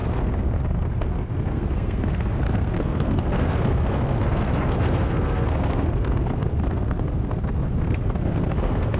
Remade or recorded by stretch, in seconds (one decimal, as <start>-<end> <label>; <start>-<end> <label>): 0.0-9.0 remade